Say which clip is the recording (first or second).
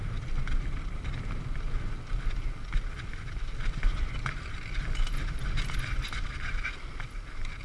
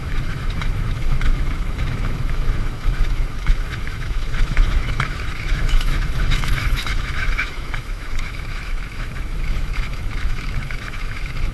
first